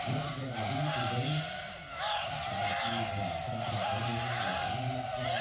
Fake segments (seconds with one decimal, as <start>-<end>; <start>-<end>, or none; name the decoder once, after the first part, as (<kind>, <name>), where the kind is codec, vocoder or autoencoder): none